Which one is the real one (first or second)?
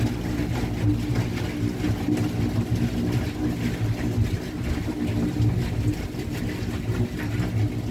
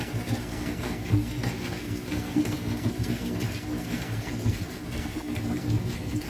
first